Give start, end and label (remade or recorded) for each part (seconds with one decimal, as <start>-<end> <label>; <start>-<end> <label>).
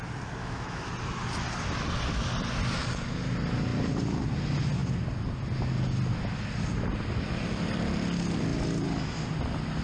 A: 0.0-0.4 recorded; 0.4-0.9 remade; 0.9-9.8 recorded